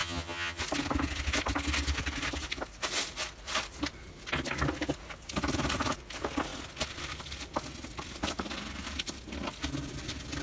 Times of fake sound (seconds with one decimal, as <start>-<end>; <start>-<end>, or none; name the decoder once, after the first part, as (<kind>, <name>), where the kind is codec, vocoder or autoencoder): 0.0-0.6 (vocoder, HiFi-GAN)